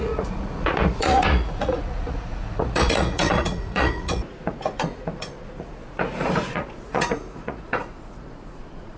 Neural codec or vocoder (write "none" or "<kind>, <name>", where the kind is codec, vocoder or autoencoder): vocoder, Vocos